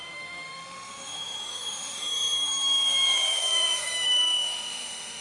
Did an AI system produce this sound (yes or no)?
yes